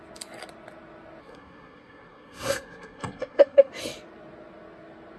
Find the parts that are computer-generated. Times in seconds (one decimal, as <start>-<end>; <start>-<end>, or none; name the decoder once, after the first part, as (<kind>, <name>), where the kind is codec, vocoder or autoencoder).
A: 1.2-3.7 (codec, SNAC)